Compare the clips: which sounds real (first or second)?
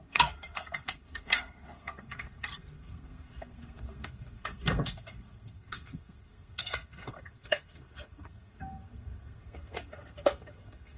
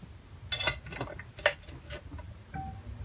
second